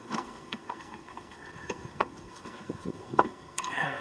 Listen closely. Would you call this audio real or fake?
fake